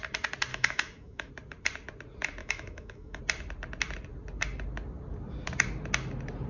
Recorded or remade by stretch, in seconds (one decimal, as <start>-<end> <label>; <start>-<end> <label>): 0.0-0.5 recorded; 0.5-1.3 remade; 1.3-2.4 recorded; 2.4-3.2 remade; 3.2-6.5 recorded